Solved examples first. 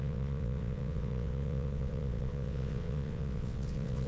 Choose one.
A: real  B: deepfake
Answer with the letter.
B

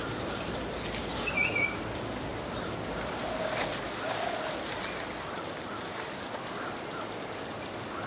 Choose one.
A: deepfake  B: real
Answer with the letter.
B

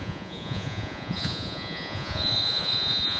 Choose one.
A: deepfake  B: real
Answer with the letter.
A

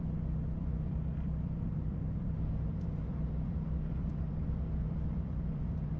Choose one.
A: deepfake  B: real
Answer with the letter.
A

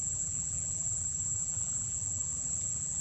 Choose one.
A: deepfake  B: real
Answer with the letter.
A